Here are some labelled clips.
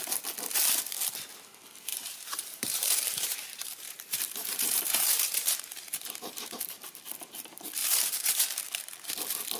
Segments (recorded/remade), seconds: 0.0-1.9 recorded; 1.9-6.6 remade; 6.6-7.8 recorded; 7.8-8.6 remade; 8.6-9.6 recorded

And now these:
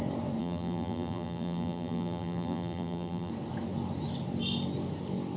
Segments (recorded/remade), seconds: 0.0-0.4 recorded; 0.4-3.3 remade; 3.3-5.4 recorded

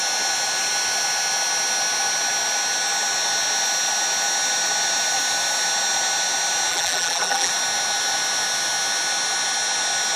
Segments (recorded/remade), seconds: 0.0-6.7 recorded; 6.7-7.5 remade; 7.5-10.2 recorded

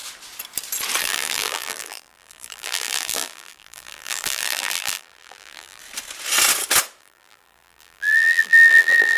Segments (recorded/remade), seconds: 0.0-1.0 recorded; 1.0-5.8 remade; 5.8-7.0 recorded; 7.0-9.2 remade

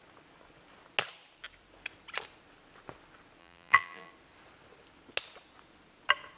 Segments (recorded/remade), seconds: 0.0-3.4 recorded; 3.4-4.1 remade; 4.1-6.4 recorded

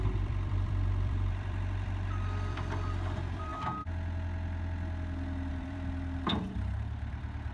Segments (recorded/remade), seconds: 0.0-3.5 remade; 3.5-5.5 recorded; 5.5-7.5 remade